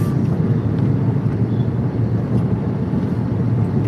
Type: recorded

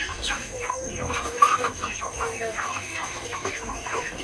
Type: remade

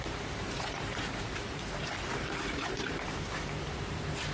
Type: remade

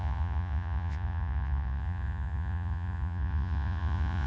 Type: remade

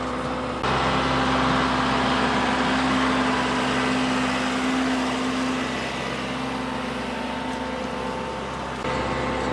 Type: recorded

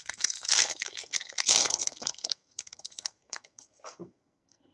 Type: remade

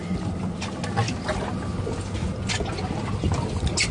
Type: recorded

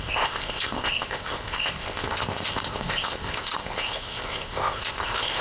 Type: remade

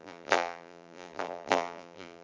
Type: remade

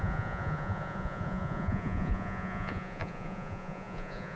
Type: remade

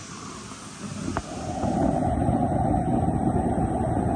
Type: recorded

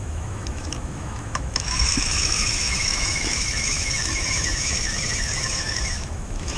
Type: remade